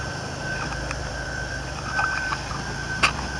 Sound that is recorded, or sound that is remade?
remade